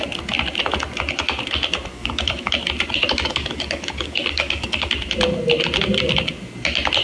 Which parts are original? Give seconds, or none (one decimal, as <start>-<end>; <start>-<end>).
0.0-1.9; 2.5-3.3; 4.9-7.0